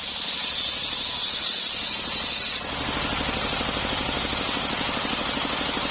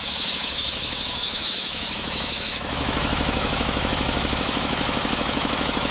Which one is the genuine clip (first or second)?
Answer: first